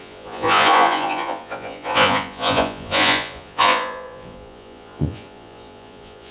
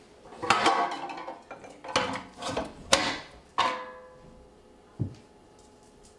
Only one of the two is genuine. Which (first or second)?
second